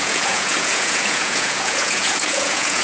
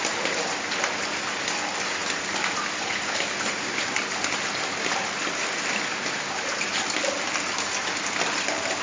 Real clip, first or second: second